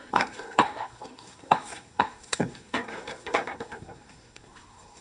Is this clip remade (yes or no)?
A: yes